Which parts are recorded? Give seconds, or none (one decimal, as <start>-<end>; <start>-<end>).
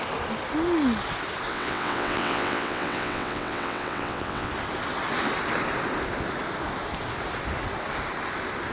0.0-1.5; 4.5-8.7